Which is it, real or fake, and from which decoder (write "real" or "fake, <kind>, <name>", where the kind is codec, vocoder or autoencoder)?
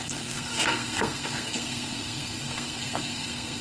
fake, codec, SNAC